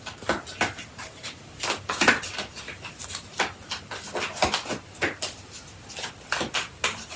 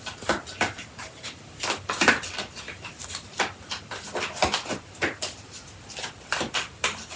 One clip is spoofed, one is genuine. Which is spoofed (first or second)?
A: second